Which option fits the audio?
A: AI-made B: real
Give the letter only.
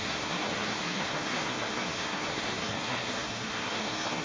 A